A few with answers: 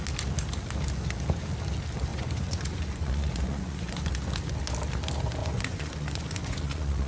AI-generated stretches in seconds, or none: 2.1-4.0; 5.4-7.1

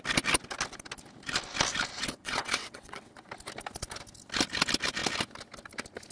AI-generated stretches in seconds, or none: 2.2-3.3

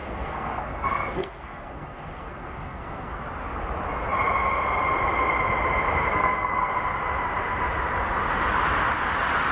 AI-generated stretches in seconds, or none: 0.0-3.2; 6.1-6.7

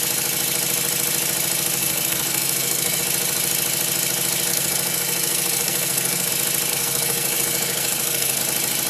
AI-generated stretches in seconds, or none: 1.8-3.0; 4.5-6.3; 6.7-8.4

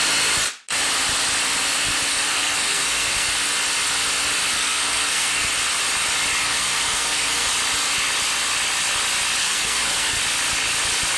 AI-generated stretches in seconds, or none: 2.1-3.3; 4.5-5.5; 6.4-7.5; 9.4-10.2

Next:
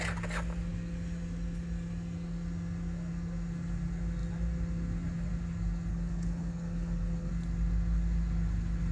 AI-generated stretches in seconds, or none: 5.9-7.3

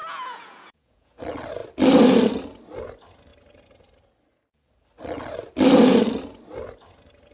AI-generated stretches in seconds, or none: 0.0-1.2

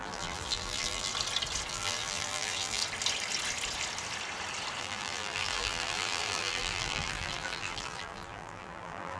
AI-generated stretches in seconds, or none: 0.0-1.1; 1.7-2.8; 4.8-9.2